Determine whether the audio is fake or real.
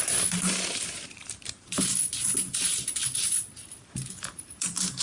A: fake